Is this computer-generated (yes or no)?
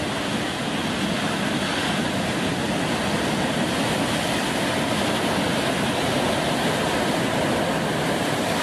no